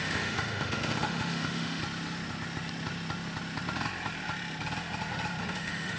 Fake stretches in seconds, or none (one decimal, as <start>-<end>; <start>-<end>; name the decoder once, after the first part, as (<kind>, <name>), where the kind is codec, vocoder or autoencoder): 0.0-1.8 (autoencoder, DAC-VAE); 5.4-6.0

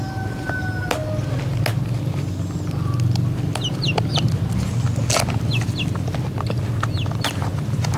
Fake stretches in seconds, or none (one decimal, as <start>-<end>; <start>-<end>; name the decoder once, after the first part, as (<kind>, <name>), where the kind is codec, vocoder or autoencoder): none

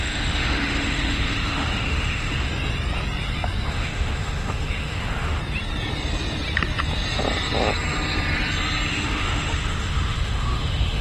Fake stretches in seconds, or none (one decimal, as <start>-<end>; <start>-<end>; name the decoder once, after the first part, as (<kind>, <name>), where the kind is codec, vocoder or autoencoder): 0.0-2.5 (autoencoder, DAC-VAE); 3.7-5.4; 8.9-11.0

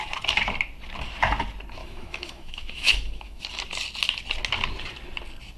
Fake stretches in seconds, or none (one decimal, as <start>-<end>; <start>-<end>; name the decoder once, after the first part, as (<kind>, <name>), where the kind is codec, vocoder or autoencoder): 1.8-3.4 (autoencoder, DAC-VAE)